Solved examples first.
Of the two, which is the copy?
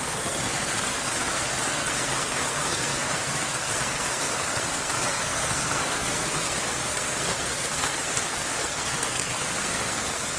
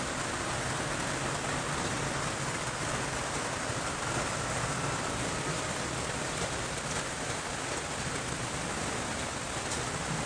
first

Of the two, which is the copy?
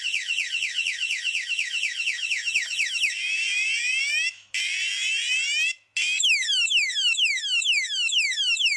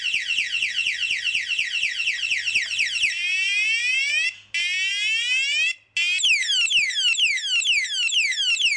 first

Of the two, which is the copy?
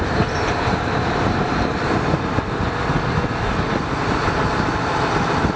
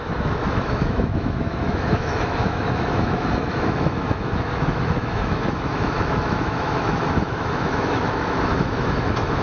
second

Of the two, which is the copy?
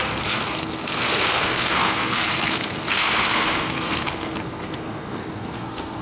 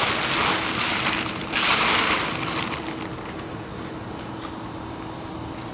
first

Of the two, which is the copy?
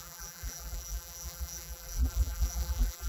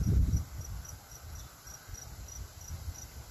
first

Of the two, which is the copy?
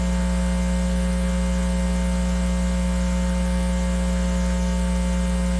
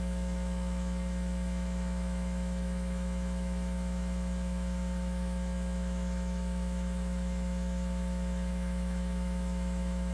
second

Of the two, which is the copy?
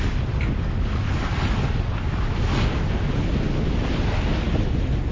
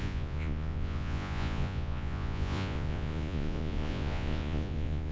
second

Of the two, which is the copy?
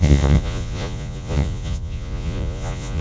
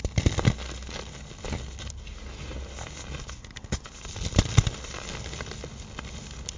first